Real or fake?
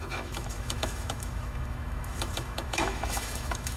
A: fake